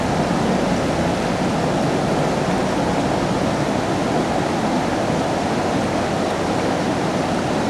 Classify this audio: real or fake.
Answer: real